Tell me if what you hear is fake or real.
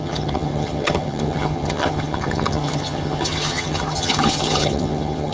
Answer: fake